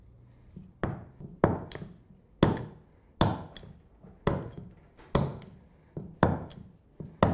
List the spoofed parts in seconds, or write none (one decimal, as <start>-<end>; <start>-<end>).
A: none